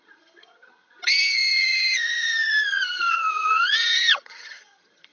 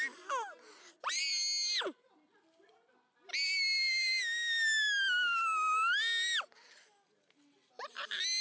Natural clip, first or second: second